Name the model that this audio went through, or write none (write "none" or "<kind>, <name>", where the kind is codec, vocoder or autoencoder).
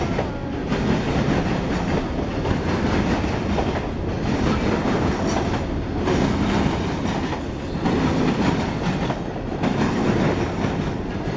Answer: none